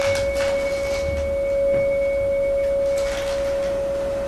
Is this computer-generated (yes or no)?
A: no